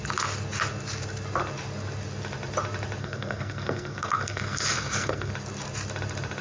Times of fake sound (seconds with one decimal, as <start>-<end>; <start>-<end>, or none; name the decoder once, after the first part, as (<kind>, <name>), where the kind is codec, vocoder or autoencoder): 3.0-5.3 (codec, SNAC)